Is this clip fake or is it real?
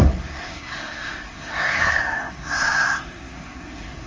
fake